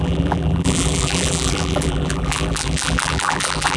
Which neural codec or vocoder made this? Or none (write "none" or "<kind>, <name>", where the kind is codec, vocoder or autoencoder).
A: vocoder, BigVGAN v2